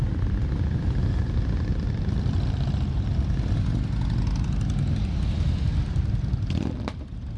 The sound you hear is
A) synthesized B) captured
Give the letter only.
B